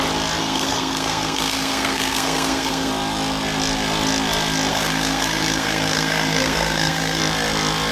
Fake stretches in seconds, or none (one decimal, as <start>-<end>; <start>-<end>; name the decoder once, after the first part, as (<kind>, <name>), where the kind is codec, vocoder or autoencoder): 0.4-2.9 (codec, SNAC); 4.7-7.2